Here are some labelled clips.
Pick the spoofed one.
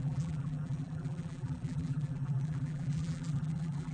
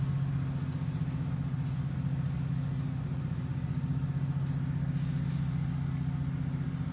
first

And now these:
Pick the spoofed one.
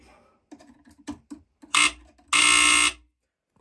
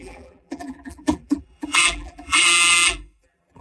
second